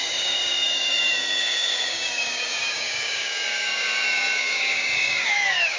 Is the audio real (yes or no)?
no